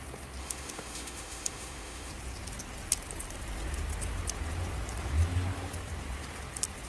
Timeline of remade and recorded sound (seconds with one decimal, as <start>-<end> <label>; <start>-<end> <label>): 0.0-0.4 recorded; 0.4-2.1 remade; 2.1-6.9 recorded